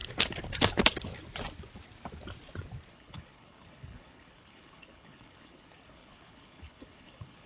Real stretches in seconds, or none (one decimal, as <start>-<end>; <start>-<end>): 0.0-2.9